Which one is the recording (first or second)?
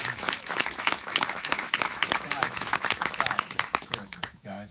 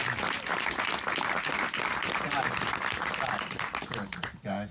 second